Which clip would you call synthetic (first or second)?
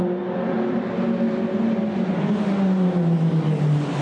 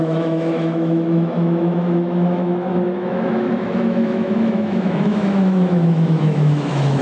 second